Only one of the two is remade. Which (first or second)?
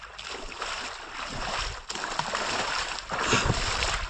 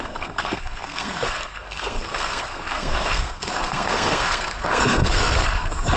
second